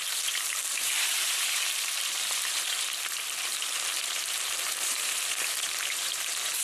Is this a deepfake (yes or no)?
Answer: yes